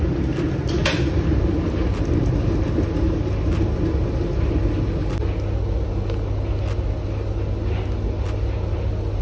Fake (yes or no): no